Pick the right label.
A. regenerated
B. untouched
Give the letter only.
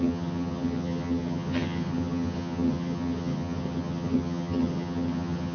A